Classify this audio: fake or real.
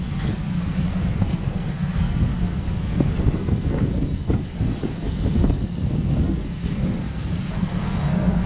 fake